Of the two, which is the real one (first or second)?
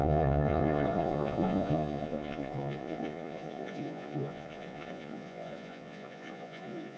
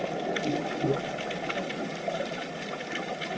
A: second